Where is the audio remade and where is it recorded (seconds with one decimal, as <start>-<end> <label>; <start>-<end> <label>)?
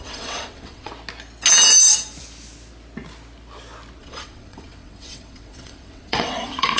0.0-0.9 remade; 0.9-4.0 recorded; 4.0-6.8 remade